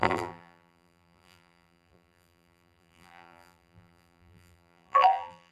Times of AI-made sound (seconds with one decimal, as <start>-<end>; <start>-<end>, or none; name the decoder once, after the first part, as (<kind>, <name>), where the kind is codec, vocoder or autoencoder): 0.0-5.5 (vocoder, BigVGAN v2)